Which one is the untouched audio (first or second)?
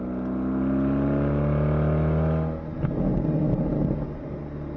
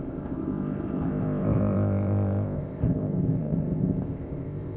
first